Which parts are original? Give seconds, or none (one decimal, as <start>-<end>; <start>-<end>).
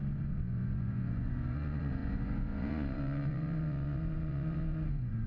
none